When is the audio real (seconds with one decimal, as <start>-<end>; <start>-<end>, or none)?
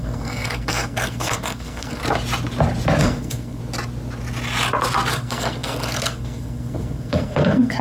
2.0-3.0; 3.6-5.1